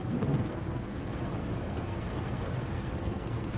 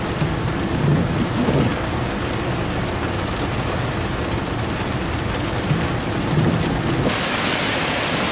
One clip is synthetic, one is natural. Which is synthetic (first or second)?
first